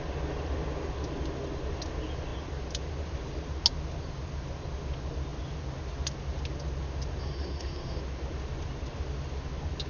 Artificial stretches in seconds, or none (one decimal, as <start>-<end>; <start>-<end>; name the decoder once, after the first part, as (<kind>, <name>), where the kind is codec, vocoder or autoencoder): 7.2-8.0 (codec, SNAC)